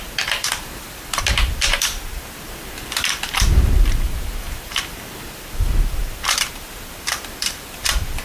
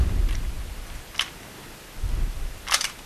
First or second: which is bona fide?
second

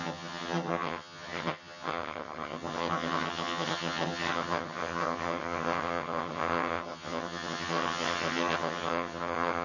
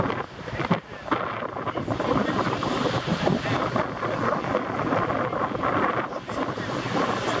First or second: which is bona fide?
second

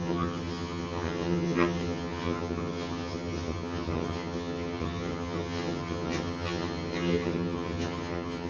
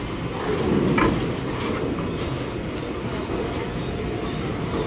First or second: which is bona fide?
second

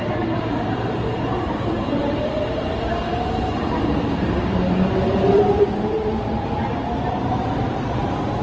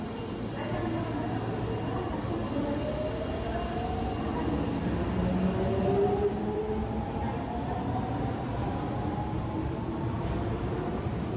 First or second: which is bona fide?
second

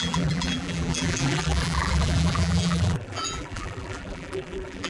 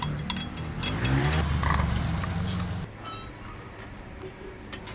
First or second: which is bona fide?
second